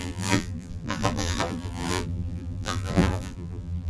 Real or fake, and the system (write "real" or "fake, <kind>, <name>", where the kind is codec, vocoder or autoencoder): fake, vocoder, BigVGAN v2